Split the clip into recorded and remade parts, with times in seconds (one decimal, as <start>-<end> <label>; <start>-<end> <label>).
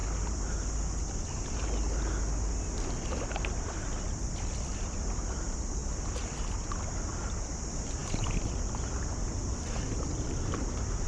0.0-2.9 recorded; 2.9-5.8 remade; 5.8-6.9 recorded; 6.9-11.1 remade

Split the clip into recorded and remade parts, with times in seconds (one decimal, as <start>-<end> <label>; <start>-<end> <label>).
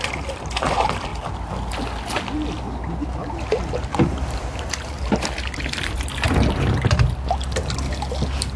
0.0-3.9 recorded; 3.9-5.1 remade; 5.1-8.6 recorded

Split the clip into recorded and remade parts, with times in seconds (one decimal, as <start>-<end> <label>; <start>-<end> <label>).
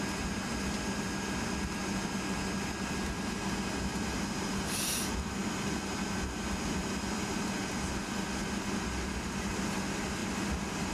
0.0-10.9 recorded